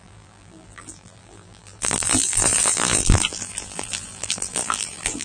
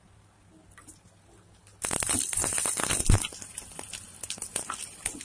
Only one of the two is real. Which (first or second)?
second